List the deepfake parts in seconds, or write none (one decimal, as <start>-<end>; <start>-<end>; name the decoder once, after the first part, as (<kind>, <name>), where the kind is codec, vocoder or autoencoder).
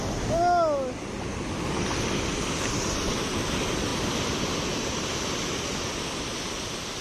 none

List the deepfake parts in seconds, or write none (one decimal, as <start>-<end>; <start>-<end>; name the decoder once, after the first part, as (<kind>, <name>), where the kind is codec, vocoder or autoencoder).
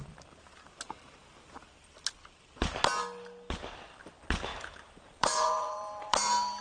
4.5-6.6 (vocoder, BigVGAN v2)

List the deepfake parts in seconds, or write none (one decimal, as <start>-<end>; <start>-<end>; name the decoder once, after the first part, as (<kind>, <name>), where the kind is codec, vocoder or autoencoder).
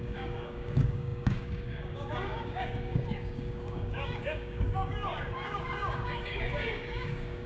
0.0-7.5 (codec, DAC)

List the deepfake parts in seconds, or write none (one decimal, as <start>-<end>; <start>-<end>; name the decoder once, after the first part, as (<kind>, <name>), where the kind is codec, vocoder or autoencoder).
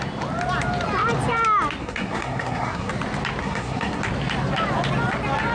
1.8-2.9 (codec, SNAC); 3.4-4.0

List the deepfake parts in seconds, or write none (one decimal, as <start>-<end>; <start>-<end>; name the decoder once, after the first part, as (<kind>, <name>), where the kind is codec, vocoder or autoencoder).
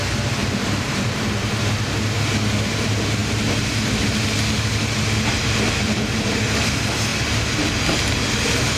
0.4-1.2 (vocoder, BigVGAN v2)